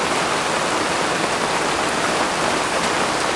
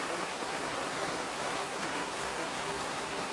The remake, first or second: second